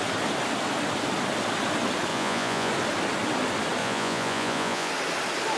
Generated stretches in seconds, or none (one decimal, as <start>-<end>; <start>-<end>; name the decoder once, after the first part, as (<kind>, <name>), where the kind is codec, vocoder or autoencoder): 2.1-2.7 (vocoder, Vocos); 3.8-4.9